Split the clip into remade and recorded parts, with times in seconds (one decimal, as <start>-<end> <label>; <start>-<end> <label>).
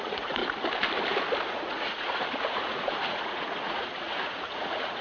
0.0-0.4 remade; 0.4-1.5 recorded; 1.5-5.0 remade